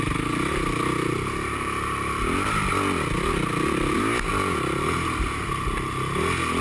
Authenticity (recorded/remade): recorded